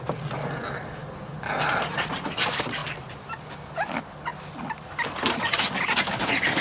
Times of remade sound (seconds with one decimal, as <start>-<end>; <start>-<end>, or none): 0.0-1.0; 2.0-2.8; 3.5-4.3; 4.9-6.6